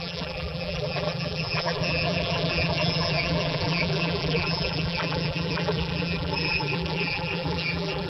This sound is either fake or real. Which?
fake